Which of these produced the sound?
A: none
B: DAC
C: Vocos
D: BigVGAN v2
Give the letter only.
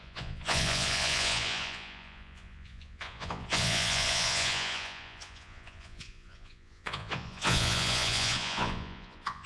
C